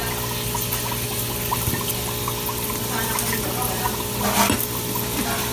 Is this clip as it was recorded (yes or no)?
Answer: yes